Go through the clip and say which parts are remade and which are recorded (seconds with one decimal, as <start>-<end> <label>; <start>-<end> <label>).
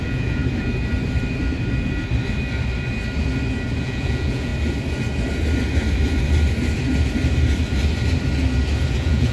0.0-0.4 remade; 0.4-3.8 recorded; 3.8-4.5 remade; 4.5-8.9 recorded; 8.9-9.3 remade